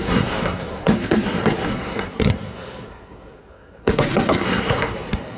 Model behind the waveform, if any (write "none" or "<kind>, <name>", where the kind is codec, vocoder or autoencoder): codec, SNAC